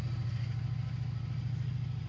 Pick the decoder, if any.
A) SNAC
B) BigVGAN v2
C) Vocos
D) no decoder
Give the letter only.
D